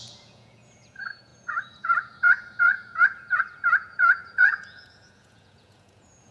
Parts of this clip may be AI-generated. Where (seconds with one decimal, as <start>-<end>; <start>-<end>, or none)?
0.0-6.3